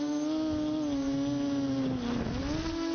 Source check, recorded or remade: recorded